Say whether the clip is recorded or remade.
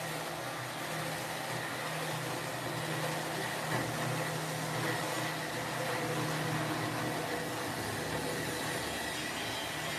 recorded